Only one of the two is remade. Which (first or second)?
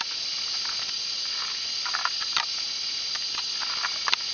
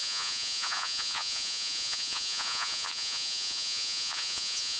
second